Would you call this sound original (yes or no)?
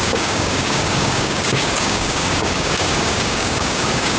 no